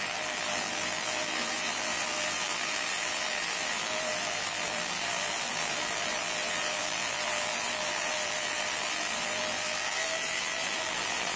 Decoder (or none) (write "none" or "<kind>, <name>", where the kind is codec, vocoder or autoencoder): vocoder, BigVGAN v2